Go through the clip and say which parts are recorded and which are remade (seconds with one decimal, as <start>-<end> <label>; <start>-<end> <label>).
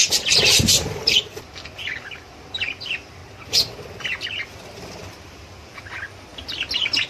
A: 0.0-3.2 remade; 3.2-4.5 recorded; 4.5-6.3 remade; 6.3-7.1 recorded